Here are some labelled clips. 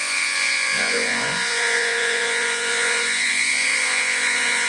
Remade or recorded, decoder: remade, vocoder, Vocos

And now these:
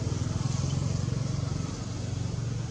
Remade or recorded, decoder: recorded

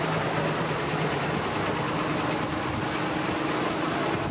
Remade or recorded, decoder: recorded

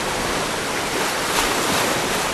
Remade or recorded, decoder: recorded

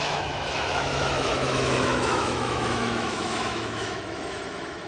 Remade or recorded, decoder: remade, autoencoder, DAC-VAE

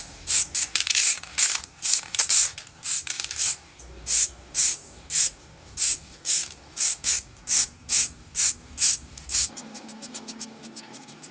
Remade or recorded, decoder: remade, codec, DAC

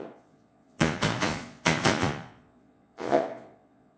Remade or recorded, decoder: remade, vocoder, Vocos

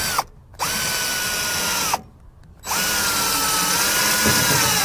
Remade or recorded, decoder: recorded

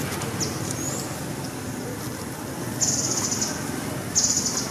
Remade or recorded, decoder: recorded